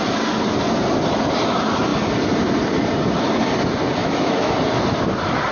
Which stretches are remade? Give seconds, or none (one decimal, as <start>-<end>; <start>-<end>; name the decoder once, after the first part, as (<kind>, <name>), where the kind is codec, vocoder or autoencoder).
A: 4.0-4.5 (autoencoder, DAC-VAE)

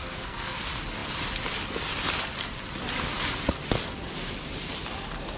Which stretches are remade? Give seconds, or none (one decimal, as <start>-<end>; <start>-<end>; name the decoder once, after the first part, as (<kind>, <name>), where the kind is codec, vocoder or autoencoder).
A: 0.0-0.6 (codec, SNAC)

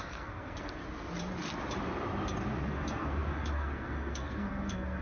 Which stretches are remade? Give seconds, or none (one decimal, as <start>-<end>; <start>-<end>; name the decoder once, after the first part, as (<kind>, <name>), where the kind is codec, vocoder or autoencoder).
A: 0.0-0.8 (codec, SNAC); 2.7-5.0

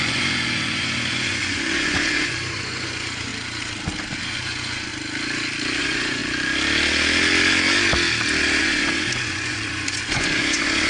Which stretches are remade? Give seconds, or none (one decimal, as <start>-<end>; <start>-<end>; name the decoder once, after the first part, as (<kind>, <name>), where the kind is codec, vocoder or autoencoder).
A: 0.0-3.3 (vocoder, Vocos); 4.2-4.9; 5.8-6.2; 8.6-10.9

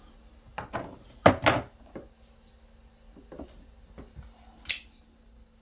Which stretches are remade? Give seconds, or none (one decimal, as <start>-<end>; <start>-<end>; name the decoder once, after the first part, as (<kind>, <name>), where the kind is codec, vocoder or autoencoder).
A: 3.3-4.5 (vocoder, BigVGAN v2)